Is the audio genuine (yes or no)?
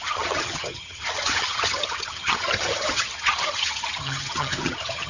no